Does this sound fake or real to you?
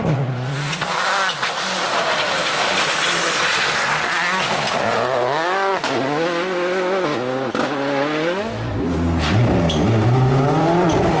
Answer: real